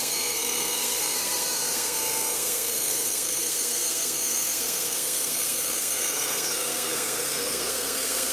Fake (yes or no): yes